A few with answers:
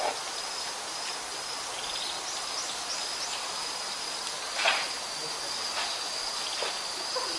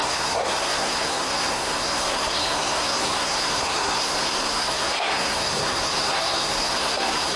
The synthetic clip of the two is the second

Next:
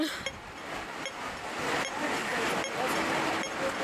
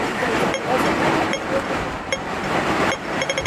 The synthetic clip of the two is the second